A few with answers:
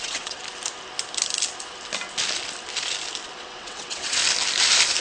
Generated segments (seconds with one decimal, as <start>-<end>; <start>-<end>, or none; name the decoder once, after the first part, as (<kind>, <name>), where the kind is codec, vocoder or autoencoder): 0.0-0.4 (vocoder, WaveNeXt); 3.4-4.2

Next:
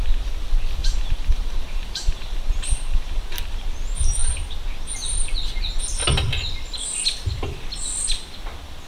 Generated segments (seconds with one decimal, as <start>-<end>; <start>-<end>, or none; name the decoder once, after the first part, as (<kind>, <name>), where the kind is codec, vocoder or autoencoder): 0.8-3.4 (vocoder, BigVGAN v2)

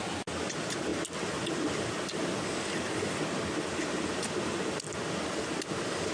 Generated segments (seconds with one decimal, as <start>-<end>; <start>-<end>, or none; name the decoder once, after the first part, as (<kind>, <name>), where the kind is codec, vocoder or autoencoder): none